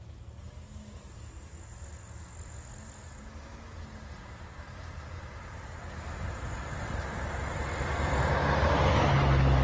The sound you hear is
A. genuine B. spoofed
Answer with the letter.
A